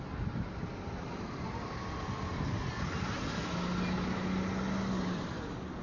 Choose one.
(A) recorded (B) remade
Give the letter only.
A